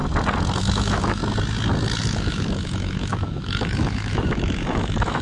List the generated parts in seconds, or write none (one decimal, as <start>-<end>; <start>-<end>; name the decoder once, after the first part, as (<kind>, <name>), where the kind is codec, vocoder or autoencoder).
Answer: 0.6-1.2 (autoencoder, DAC-VAE); 2.0-5.2